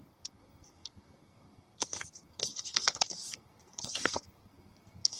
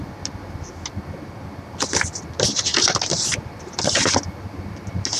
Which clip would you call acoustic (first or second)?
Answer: second